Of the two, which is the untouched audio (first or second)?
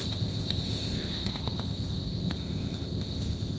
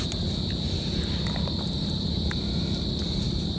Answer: second